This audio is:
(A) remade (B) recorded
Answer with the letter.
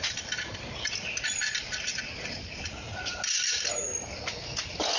B